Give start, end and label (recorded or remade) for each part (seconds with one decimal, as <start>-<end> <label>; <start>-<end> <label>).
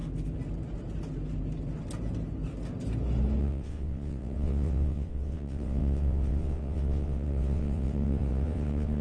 0.0-3.4 recorded; 3.4-9.0 remade